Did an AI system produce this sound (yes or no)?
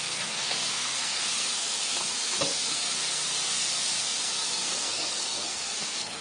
yes